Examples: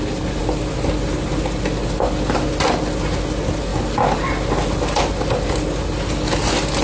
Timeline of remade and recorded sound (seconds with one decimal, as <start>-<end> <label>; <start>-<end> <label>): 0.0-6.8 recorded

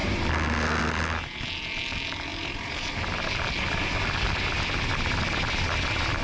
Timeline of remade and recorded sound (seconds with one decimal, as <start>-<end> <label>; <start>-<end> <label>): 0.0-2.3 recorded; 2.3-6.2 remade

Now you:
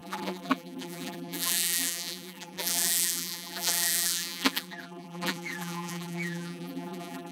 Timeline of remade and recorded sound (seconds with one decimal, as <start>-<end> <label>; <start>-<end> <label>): 0.0-7.3 remade

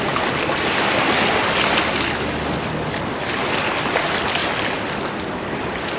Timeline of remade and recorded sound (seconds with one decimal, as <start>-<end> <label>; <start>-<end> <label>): 0.0-4.4 recorded; 4.4-6.0 remade